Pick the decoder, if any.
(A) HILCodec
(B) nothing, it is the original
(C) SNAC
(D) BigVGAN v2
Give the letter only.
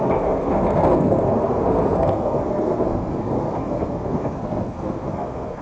C